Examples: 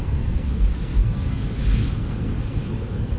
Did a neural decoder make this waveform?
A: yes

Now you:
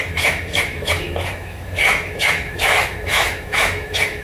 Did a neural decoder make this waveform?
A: yes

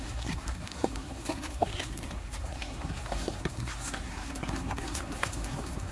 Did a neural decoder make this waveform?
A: yes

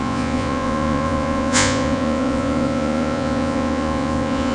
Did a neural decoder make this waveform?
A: yes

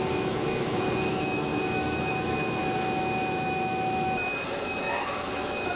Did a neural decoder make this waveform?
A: yes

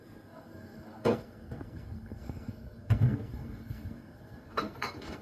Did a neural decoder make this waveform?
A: yes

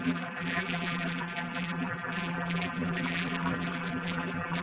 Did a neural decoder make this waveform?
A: yes